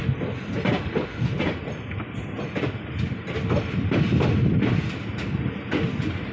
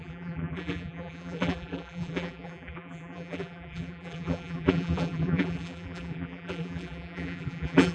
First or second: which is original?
first